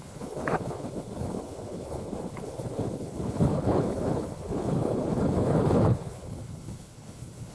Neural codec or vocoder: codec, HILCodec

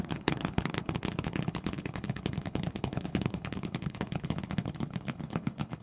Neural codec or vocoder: codec, HILCodec